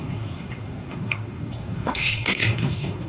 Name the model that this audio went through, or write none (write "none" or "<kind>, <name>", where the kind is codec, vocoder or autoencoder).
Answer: codec, SNAC